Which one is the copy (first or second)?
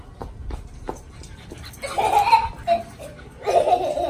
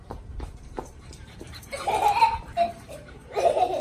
second